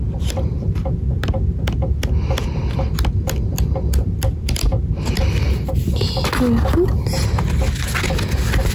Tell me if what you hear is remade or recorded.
recorded